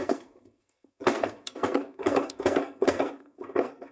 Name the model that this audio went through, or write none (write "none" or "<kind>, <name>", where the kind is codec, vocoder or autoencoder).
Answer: codec, SNAC